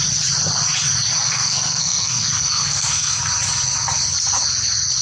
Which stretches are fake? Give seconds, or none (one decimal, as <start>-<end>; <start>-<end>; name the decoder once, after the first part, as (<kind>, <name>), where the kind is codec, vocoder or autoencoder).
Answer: 1.2-3.2 (codec, SNAC)